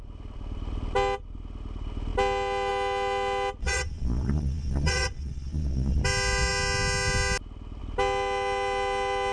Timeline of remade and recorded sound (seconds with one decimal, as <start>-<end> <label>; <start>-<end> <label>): 0.0-3.6 recorded; 3.6-6.0 remade; 6.0-9.3 recorded